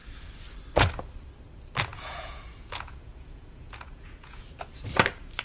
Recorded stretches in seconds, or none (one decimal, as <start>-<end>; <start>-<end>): 0.0-1.9; 4.4-5.4